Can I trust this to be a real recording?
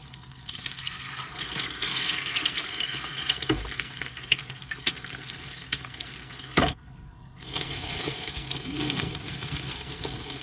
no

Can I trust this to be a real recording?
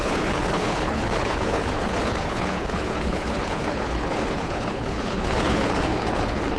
no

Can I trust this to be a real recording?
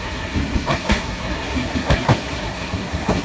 no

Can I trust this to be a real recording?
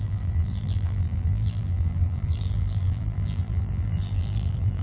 no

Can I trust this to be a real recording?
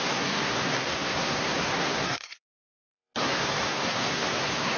no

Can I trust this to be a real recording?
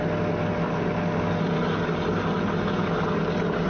yes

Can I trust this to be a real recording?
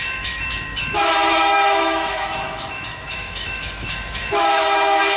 no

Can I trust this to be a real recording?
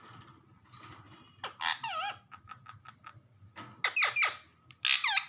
yes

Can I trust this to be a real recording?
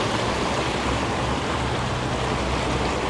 yes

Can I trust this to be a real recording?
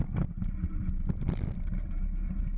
yes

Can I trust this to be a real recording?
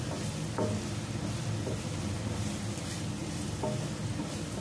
yes